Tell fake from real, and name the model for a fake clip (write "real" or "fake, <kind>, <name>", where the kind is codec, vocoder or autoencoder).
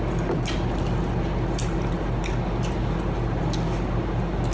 real